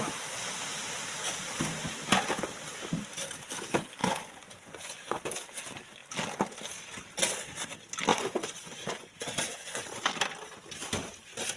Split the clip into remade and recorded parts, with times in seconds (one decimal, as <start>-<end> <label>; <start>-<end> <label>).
0.0-4.0 recorded; 4.0-5.2 remade; 5.2-8.1 recorded; 8.1-10.1 remade; 10.1-11.6 recorded